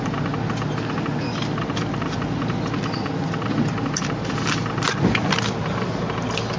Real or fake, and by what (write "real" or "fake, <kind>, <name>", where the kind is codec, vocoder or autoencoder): real